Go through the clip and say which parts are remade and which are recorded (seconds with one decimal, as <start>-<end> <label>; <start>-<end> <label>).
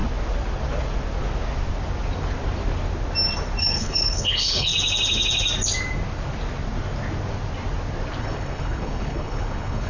0.0-3.6 recorded; 3.6-4.7 remade; 4.7-8.2 recorded; 8.2-9.9 remade